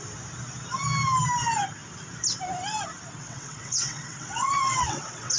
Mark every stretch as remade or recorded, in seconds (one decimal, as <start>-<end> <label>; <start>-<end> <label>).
0.0-3.2 recorded; 3.2-5.4 remade